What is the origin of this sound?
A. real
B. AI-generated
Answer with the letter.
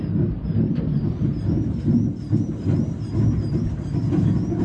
B